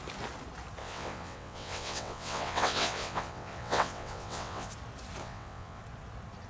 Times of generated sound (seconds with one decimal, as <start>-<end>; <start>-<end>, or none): 0.8-4.7; 5.2-5.8